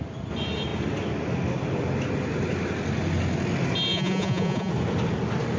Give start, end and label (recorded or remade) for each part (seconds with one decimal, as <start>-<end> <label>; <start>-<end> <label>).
0.0-3.9 recorded; 3.9-4.7 remade; 4.7-5.6 recorded